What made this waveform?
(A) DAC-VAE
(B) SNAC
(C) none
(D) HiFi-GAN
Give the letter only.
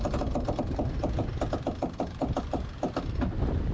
C